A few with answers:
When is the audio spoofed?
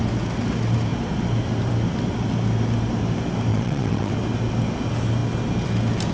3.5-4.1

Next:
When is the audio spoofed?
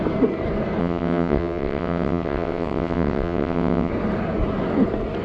0.8-3.9